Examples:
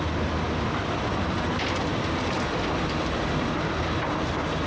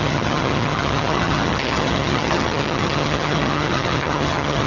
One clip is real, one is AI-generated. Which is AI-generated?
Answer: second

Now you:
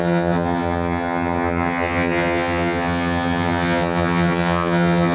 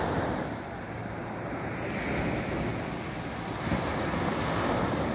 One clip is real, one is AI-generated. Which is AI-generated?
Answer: first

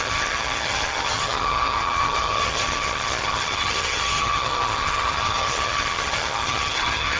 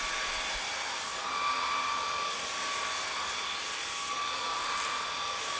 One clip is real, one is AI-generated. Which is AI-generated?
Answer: first